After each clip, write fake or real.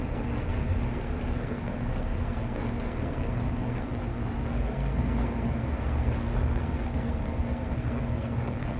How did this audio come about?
fake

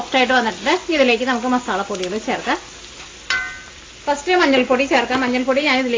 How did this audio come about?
real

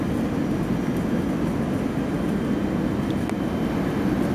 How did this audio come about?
real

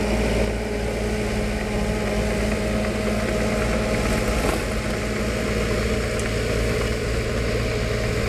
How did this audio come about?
real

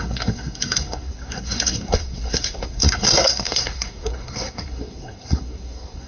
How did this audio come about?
fake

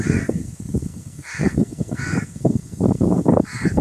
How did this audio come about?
fake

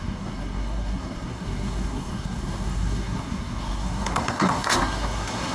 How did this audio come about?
fake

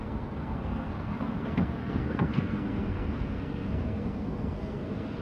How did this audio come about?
fake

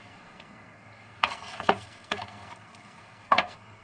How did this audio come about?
fake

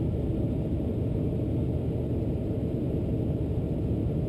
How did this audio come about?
real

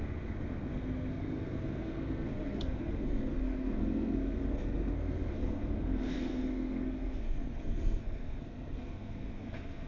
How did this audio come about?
fake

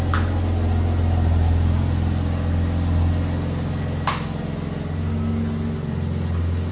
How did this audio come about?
real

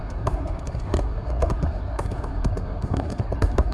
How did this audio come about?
fake